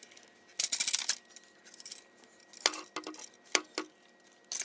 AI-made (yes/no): no